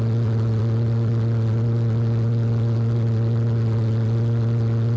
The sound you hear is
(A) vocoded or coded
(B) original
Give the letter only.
B